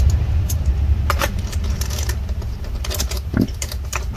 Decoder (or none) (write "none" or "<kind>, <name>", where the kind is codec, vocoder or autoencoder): vocoder, BigVGAN v2